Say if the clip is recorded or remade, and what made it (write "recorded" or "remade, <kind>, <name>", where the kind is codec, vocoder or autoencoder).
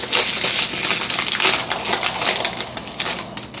recorded